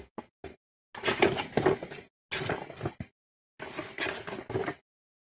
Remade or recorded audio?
recorded